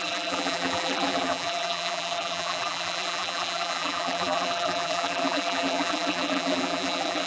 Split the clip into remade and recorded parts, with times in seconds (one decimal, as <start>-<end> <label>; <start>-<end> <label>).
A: 0.0-7.3 remade